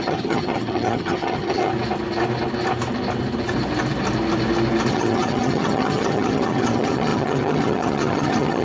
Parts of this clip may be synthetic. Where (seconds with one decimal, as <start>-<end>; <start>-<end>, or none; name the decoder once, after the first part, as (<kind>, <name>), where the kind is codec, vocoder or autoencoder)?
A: 0.0-1.7 (vocoder, HiFi-GAN); 4.9-8.6